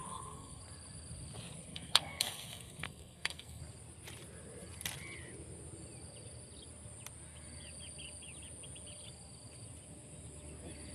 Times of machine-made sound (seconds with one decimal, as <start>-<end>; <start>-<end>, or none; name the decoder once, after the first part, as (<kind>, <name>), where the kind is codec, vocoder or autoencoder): 0.0-0.6 (codec, SNAC); 1.7-3.6